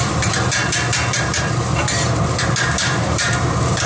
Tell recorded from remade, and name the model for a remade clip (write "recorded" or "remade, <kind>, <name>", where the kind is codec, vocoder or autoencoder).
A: remade, vocoder, BigVGAN v2